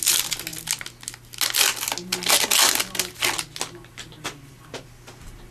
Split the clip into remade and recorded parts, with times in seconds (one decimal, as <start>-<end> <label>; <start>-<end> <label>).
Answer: 0.0-5.5 recorded